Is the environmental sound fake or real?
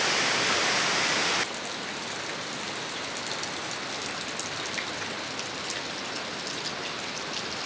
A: real